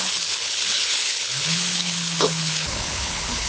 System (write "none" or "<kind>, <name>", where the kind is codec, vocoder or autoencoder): codec, HILCodec